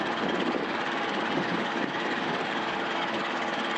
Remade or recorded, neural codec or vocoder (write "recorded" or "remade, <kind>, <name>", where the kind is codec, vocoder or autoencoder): remade, codec, DAC